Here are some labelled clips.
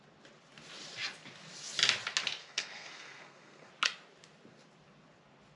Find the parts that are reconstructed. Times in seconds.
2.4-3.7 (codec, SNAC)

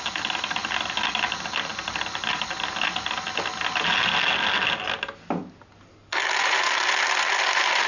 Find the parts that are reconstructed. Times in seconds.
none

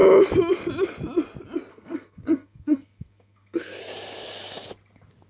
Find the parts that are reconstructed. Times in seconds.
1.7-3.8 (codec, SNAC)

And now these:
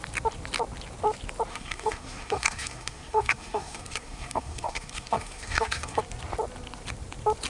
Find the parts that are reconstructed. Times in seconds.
1.5-6.0 (codec, SNAC)